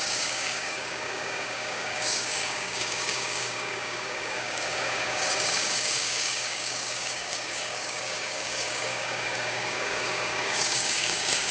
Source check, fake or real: fake